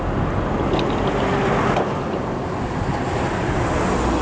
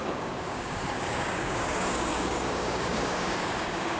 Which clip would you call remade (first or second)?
second